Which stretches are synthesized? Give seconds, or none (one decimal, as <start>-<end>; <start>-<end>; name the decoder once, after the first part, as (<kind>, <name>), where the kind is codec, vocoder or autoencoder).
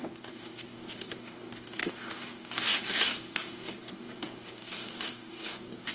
0.0-5.9 (codec, DAC)